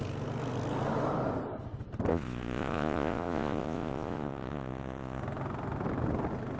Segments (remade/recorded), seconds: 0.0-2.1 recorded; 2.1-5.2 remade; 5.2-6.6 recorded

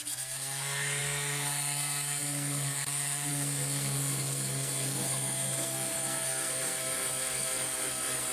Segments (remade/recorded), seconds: 0.0-8.3 remade